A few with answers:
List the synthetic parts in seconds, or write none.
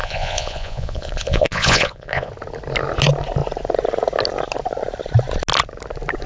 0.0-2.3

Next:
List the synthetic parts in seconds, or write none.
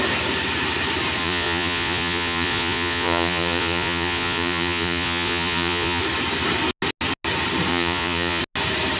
1.2-6.0; 7.7-8.4